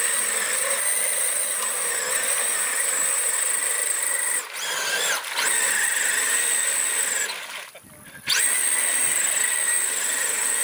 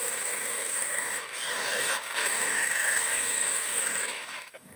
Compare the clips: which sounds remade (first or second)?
second